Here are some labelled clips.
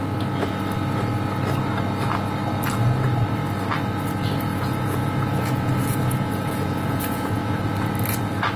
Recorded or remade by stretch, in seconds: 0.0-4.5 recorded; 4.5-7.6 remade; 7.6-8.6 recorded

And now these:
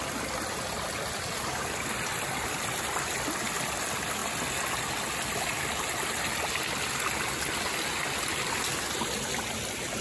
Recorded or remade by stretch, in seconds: 0.0-10.0 recorded

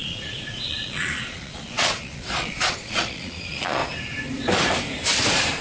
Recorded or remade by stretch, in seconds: 0.0-3.8 remade; 3.8-5.6 recorded

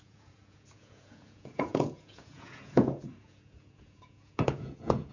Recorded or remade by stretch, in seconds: 0.0-5.1 remade

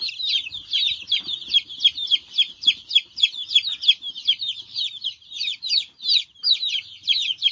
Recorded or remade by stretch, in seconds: 0.0-1.4 recorded; 1.4-5.7 remade; 5.7-7.5 recorded